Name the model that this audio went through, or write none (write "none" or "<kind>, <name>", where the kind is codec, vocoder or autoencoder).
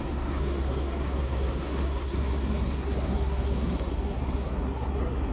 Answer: codec, SNAC